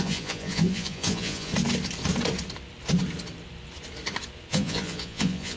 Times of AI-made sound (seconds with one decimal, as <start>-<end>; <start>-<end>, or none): 0.0-1.5; 4.5-5.6